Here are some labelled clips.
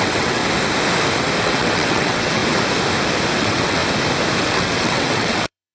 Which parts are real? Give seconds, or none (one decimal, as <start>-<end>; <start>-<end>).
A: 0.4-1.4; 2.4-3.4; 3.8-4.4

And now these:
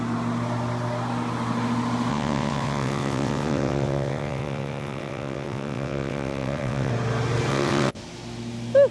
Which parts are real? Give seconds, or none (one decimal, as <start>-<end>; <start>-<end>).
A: 0.0-2.1; 6.9-7.5; 8.0-8.9

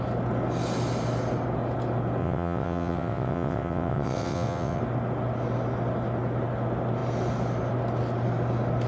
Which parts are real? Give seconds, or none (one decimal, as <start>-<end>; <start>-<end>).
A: 0.0-2.2; 4.8-8.9

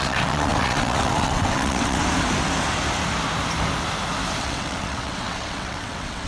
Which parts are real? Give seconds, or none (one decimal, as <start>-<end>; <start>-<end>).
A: 2.0-4.4

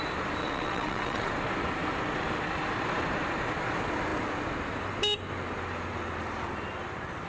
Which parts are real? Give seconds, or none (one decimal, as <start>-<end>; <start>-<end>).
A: 0.0-0.4; 1.3-7.3